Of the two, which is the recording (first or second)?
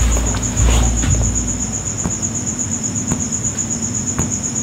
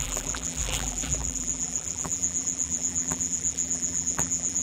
first